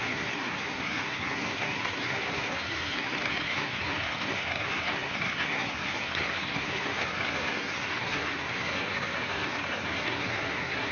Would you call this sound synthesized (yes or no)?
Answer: yes